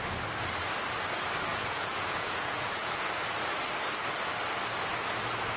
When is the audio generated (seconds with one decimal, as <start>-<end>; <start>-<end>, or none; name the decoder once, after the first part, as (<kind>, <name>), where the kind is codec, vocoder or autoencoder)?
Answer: 1.5-3.1 (vocoder, Vocos)